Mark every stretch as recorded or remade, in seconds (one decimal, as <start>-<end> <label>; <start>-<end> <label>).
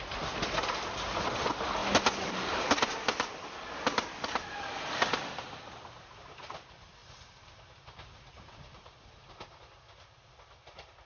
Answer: 0.0-11.1 recorded